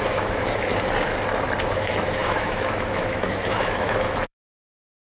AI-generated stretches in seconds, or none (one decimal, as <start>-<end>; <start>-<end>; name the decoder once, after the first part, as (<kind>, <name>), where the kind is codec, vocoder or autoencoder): 0.0-0.7 (autoencoder, DAC-VAE); 1.7-5.0